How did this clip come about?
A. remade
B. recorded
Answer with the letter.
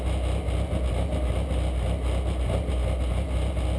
B